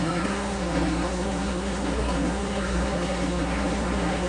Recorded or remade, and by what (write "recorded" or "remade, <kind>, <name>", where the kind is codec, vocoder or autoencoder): remade, codec, SNAC